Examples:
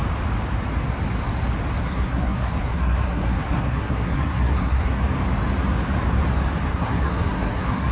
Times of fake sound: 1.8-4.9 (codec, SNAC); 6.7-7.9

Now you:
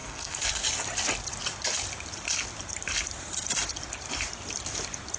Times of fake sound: 0.0-0.6 (codec, SNAC)

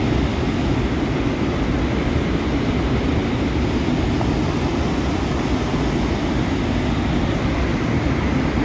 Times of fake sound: none